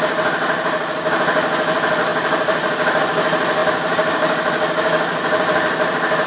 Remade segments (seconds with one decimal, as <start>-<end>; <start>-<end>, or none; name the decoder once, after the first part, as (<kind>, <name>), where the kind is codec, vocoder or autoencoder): 2.1-3.0 (vocoder, BigVGAN v2); 3.6-6.3